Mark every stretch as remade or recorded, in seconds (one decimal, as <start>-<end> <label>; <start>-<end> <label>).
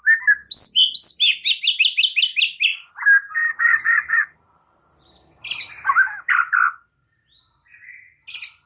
0.0-2.7 recorded; 2.7-7.3 remade; 7.3-8.7 recorded